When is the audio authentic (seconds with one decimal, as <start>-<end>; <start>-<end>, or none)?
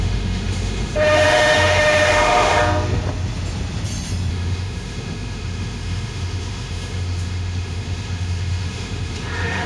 2.6-4.3